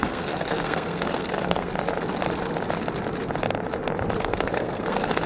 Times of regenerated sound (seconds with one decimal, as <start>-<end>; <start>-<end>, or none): 0.0-1.7; 4.2-5.3